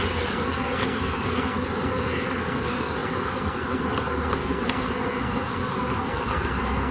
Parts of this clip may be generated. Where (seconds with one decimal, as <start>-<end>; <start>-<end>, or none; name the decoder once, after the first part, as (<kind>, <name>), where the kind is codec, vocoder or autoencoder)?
0.0-6.9 (codec, SNAC)